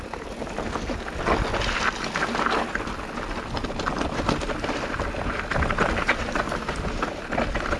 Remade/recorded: recorded